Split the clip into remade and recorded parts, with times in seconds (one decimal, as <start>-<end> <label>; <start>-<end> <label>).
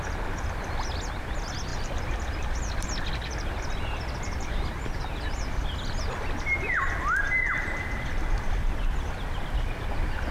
0.0-1.7 recorded; 1.7-3.1 remade; 3.1-10.3 recorded